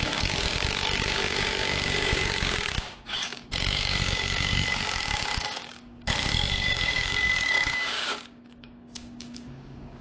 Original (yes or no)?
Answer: no